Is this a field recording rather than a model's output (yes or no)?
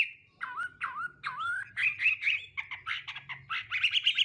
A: yes